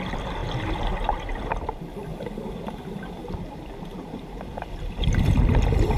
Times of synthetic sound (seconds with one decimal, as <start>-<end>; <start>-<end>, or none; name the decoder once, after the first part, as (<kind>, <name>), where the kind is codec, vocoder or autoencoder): 2.1-5.4 (vocoder, BigVGAN v2)